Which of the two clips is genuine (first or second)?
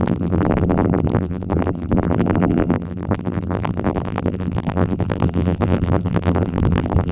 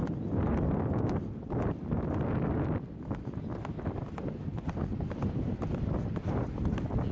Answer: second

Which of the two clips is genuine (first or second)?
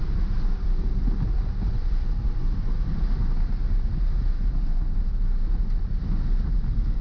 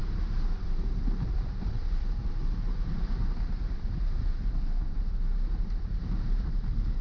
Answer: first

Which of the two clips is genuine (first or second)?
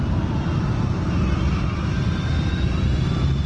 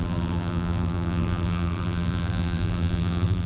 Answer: first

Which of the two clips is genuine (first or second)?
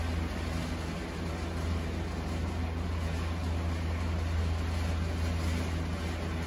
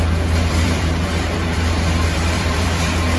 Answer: first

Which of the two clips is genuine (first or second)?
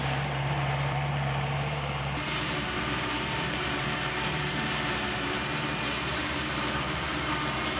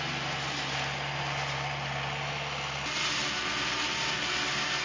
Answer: second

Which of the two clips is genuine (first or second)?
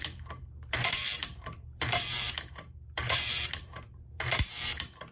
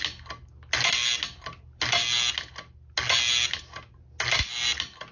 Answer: second